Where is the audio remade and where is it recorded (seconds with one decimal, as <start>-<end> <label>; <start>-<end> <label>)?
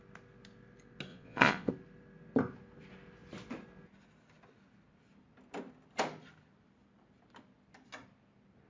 0.0-1.1 recorded; 1.1-1.7 remade; 1.7-8.7 recorded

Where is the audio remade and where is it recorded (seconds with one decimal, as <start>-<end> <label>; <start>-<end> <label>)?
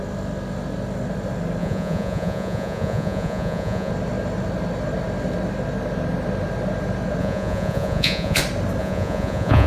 0.0-1.6 recorded; 1.6-3.9 remade; 3.9-7.2 recorded; 7.2-8.4 remade; 8.4-8.8 recorded; 8.8-9.7 remade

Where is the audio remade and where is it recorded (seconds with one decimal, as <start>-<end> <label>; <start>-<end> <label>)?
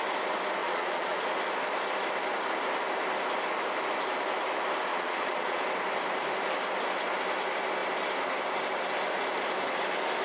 0.0-0.6 recorded; 0.6-1.2 remade; 1.2-4.9 recorded; 4.9-5.6 remade; 5.6-10.2 recorded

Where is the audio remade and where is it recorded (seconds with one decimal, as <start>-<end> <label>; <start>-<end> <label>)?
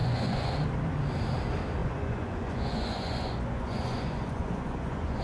0.0-0.5 remade; 0.5-1.8 recorded; 1.8-5.2 remade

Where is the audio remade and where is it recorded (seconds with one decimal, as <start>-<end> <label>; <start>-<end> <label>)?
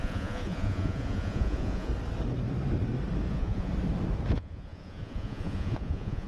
0.0-1.9 remade; 1.9-3.3 recorded; 3.3-3.7 remade; 3.7-4.3 recorded; 4.3-6.3 remade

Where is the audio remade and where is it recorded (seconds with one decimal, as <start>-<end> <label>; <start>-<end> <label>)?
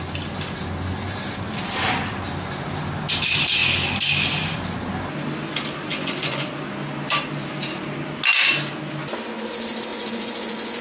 0.0-5.9 recorded; 5.9-6.5 remade; 6.5-9.9 recorded; 9.9-10.8 remade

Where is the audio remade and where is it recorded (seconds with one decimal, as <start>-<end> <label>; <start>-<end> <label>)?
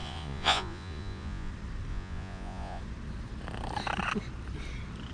0.0-1.5 remade; 1.5-1.9 recorded; 1.9-2.8 remade; 2.8-5.1 recorded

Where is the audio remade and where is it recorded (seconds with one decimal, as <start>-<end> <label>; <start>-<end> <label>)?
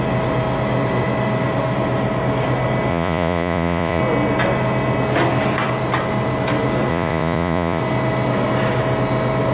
0.0-2.9 recorded; 2.9-4.0 remade; 4.0-6.9 recorded; 6.9-7.8 remade; 7.8-9.5 recorded